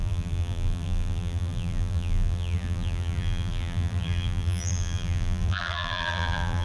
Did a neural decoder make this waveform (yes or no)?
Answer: yes